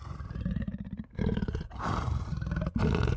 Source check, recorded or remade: remade